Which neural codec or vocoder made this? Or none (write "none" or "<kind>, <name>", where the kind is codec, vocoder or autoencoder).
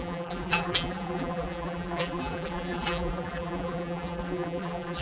vocoder, BigVGAN v2